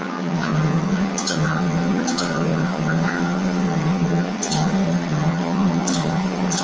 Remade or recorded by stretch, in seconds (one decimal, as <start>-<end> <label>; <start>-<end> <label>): 0.0-6.6 remade